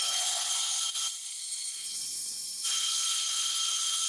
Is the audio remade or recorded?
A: remade